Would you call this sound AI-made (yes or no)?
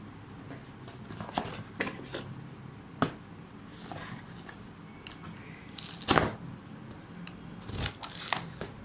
no